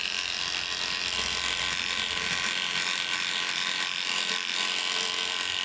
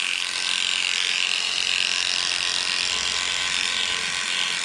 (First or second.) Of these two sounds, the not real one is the first